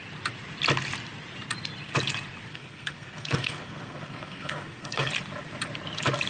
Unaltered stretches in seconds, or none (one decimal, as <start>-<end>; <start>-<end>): 0.0-2.5; 5.1-6.3